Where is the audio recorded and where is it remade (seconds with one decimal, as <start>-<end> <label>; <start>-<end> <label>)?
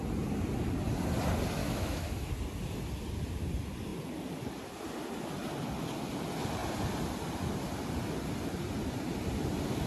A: 0.0-1.6 recorded; 1.6-2.3 remade; 2.3-9.9 recorded